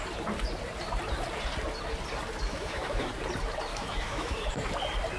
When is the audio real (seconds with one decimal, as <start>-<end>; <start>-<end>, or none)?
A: 0.0-2.5; 3.1-3.7; 4.5-5.2